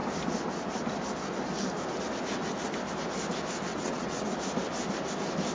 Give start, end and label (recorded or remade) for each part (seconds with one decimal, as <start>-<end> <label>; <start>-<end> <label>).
0.0-3.7 recorded; 3.7-4.3 remade; 4.3-5.5 recorded